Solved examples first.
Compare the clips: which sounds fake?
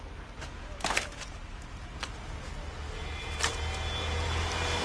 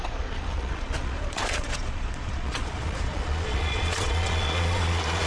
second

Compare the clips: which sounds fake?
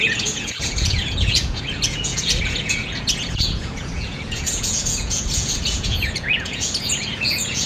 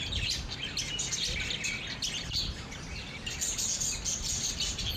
first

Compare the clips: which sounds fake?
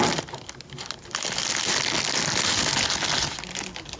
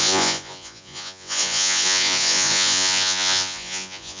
second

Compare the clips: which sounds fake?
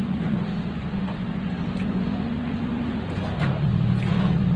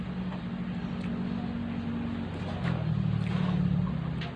first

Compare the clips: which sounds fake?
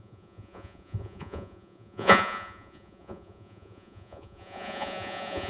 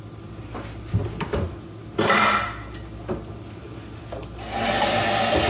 first